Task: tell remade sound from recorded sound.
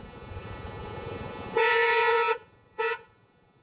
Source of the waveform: remade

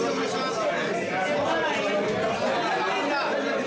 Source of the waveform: recorded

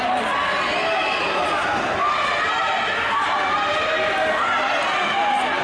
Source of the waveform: recorded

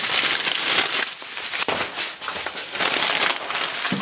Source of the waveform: recorded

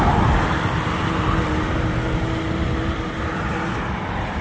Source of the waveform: recorded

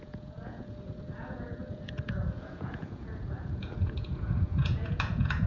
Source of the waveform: remade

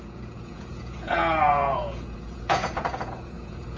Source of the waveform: remade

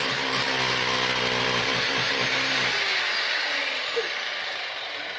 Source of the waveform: recorded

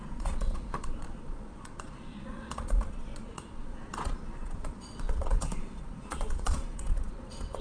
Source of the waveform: remade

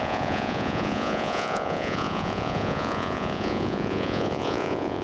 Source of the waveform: remade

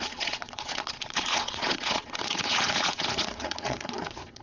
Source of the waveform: remade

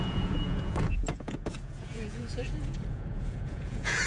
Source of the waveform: remade